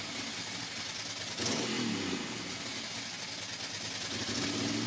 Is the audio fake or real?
real